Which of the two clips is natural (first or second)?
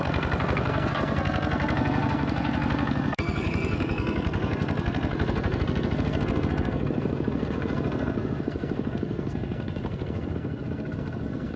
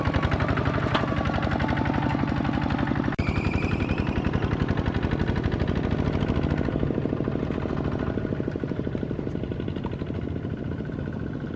second